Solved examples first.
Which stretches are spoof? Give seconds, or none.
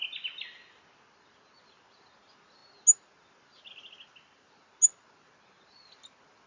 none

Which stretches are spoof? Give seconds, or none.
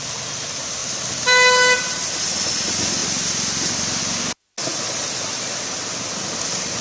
3.0-4.0 (vocoder, BigVGAN v2)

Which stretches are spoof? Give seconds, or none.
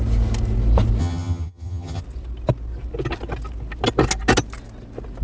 1.0-2.0 (vocoder, HiFi-GAN)